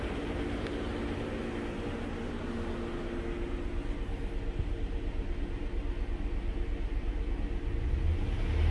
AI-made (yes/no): no